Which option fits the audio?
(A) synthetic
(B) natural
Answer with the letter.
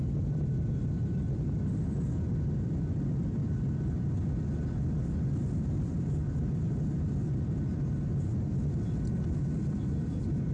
B